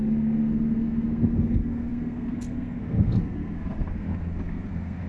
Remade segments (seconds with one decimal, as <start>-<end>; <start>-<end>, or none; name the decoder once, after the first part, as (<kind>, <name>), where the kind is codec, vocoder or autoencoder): 0.0-5.1 (codec, SNAC)